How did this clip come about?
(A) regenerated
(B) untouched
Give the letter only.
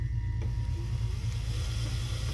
B